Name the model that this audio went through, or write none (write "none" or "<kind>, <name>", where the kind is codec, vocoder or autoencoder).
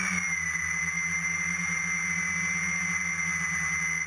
none